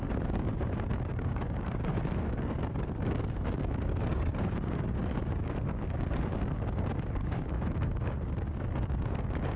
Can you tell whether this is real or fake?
fake